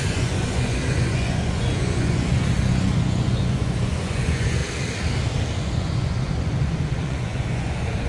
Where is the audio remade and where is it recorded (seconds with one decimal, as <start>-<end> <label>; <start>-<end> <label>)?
0.0-4.6 remade; 4.6-5.6 recorded; 5.6-8.1 remade